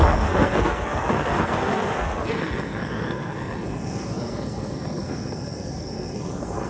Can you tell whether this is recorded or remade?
remade